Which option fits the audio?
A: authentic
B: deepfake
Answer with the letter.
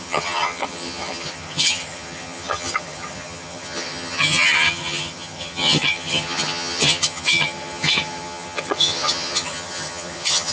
B